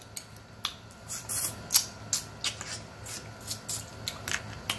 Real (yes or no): yes